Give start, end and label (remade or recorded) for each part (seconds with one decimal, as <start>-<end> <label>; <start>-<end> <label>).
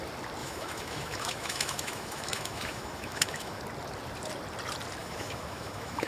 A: 0.0-0.4 recorded; 0.4-3.6 remade; 3.6-5.0 recorded; 5.0-6.1 remade